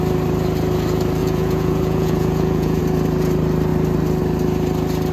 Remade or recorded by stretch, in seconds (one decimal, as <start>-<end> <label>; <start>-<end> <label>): 0.0-1.2 recorded; 1.2-2.8 remade; 2.8-5.1 recorded